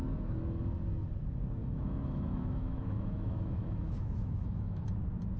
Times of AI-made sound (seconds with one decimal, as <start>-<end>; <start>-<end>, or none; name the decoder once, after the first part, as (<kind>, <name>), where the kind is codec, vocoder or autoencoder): 1.6-4.8 (autoencoder, DAC-VAE)